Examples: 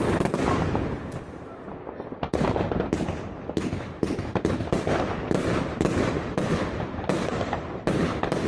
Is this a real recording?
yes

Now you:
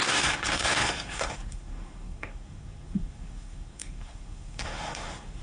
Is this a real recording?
no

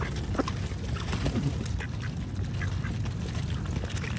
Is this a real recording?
yes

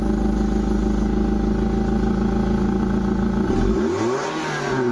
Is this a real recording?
yes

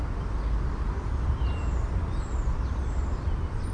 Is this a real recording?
yes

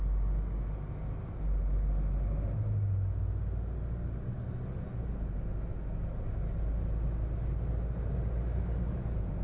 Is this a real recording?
yes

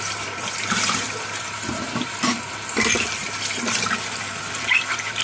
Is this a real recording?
no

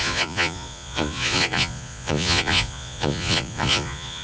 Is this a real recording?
no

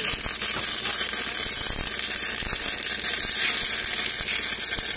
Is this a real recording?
yes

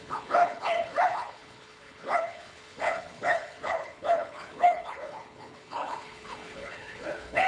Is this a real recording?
no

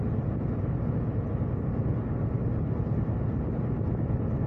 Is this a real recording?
yes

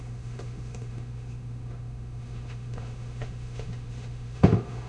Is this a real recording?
no